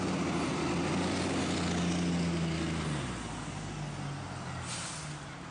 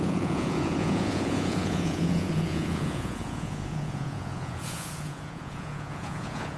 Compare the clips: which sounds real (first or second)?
first